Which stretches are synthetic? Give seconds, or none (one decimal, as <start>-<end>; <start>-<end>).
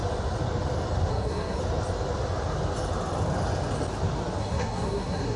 1.1-1.6; 4.4-5.4